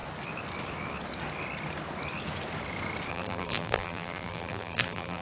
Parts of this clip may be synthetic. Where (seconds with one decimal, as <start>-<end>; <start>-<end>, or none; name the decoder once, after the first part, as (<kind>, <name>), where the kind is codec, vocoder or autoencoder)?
3.1-5.2 (vocoder, BigVGAN v2)